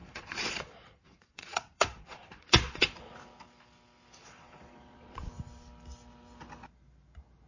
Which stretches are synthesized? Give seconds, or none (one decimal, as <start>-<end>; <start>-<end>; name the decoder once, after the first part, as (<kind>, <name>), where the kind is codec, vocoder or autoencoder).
0.0-3.1 (vocoder, Vocos); 4.2-5.3